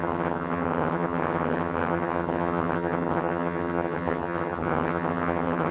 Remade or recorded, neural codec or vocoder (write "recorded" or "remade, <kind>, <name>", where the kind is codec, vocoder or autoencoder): remade, vocoder, HiFi-GAN